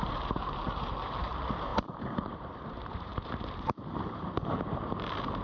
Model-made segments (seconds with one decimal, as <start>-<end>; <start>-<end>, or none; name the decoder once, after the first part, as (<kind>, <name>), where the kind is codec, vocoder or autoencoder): 0.0-5.4 (vocoder, BigVGAN v2)